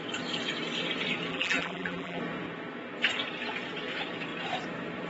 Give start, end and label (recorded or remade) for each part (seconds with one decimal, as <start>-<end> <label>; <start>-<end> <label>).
0.0-1.3 recorded; 1.3-2.2 remade; 2.2-5.1 recorded